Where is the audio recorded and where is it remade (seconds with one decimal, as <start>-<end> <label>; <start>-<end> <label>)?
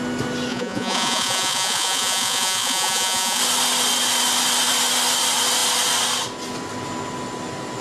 0.0-0.5 recorded; 0.5-3.4 remade; 3.4-7.8 recorded